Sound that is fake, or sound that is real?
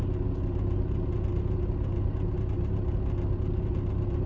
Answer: real